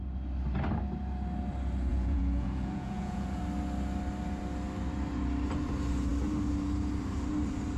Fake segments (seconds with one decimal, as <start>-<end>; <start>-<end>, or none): 1.9-3.4